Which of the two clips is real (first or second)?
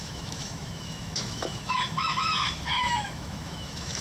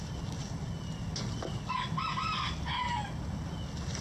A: second